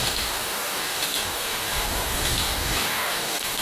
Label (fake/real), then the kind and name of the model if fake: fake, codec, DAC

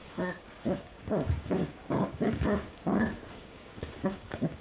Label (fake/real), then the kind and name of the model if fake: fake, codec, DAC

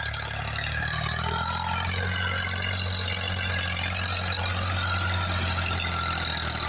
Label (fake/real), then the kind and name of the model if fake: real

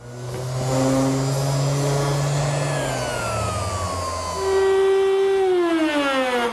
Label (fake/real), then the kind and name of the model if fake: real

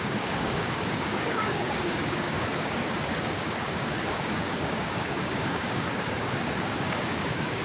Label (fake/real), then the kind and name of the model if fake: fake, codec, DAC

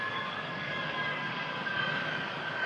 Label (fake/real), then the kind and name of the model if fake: fake, codec, DAC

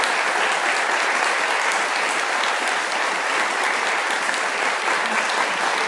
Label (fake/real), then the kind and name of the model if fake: real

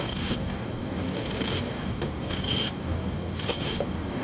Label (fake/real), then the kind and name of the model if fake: fake, codec, DAC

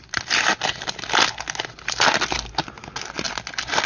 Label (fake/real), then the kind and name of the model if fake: real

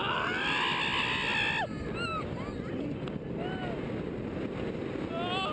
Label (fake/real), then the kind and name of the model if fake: real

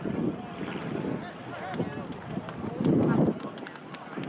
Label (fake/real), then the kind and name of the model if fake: real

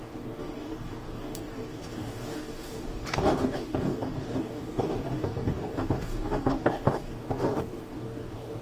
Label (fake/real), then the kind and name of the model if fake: fake, codec, DAC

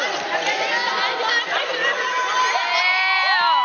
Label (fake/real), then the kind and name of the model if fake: real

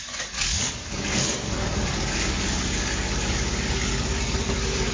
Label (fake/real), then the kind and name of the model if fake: fake, codec, DAC